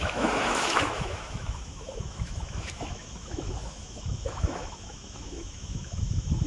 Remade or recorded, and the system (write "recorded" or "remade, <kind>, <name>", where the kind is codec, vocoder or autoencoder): remade, autoencoder, DAC-VAE